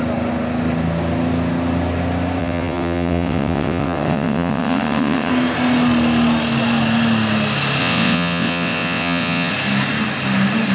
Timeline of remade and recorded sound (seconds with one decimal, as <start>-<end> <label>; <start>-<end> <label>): 0.0-2.4 recorded; 2.4-5.3 remade; 5.3-7.8 recorded; 7.8-9.5 remade; 9.5-10.7 recorded